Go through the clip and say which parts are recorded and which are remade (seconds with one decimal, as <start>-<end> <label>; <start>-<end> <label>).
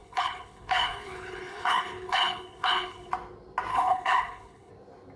0.0-3.1 remade; 3.1-3.7 recorded; 3.7-4.7 remade; 4.7-5.2 recorded